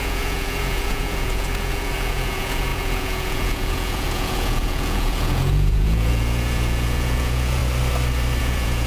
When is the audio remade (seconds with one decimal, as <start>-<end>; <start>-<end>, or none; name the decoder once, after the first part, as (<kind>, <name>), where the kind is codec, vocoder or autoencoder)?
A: 0.0-7.6 (vocoder, Vocos); 8.4-8.9